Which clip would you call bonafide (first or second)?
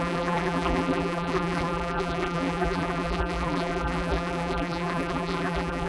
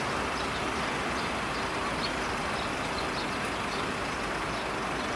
second